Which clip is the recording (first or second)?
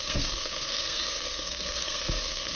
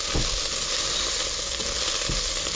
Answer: second